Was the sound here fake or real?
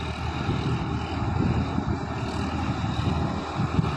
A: real